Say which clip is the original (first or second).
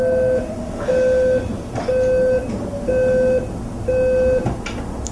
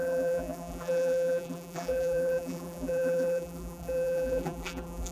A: first